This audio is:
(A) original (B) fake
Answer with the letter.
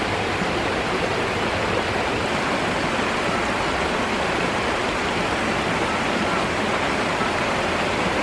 A